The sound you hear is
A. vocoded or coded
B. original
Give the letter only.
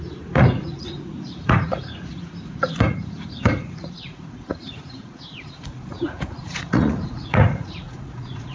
A